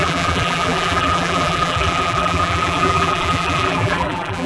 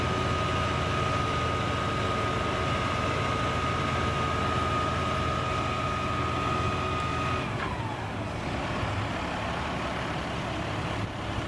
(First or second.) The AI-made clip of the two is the first